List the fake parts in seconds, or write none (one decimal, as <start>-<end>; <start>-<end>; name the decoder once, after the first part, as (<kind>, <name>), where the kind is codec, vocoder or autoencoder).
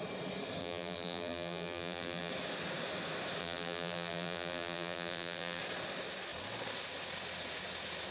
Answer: 0.6-2.3 (vocoder, BigVGAN v2); 3.4-5.6